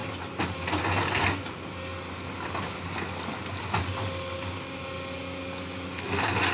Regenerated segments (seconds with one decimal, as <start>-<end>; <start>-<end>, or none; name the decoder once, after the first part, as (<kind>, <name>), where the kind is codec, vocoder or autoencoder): none